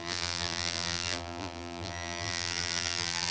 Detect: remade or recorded remade